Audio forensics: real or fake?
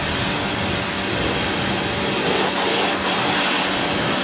real